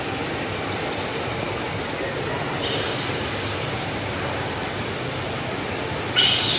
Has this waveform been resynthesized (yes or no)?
no